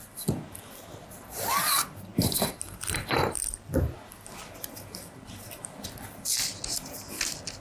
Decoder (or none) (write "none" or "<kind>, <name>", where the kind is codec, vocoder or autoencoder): none